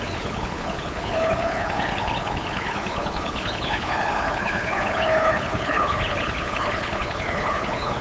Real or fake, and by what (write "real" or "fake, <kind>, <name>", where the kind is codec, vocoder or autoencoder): fake, codec, HILCodec